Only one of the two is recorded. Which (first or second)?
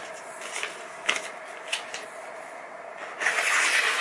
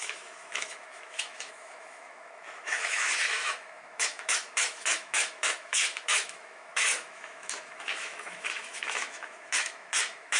first